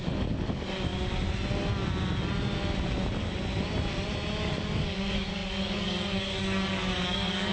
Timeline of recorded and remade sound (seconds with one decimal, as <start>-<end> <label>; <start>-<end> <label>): 0.0-0.9 remade; 0.9-4.4 recorded; 4.4-7.5 remade